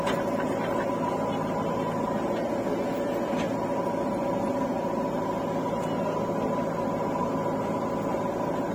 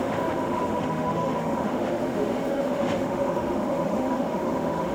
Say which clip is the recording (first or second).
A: first